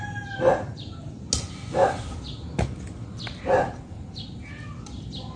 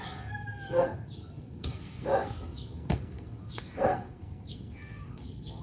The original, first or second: first